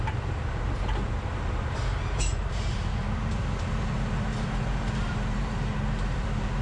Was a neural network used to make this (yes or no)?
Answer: yes